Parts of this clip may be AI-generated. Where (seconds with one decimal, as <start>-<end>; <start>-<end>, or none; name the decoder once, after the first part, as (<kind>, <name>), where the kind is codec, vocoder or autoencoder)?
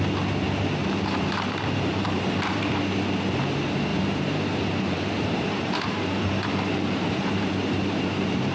0.8-2.7 (vocoder, BigVGAN v2); 3.9-8.5